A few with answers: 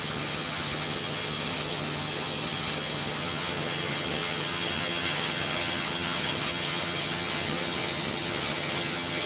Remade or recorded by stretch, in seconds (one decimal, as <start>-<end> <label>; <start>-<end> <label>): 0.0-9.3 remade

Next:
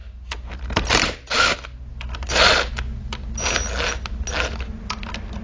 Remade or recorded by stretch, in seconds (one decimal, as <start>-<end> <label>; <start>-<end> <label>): 0.0-5.4 recorded

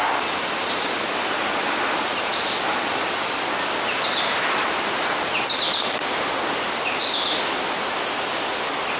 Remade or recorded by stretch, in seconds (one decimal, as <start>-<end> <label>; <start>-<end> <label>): 0.0-9.0 recorded

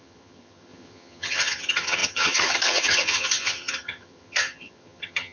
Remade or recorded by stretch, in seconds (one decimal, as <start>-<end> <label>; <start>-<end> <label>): 0.0-5.3 remade